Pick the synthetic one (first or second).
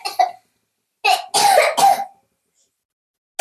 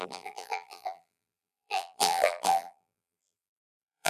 second